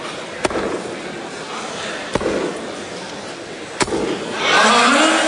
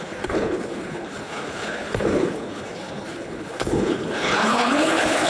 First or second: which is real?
first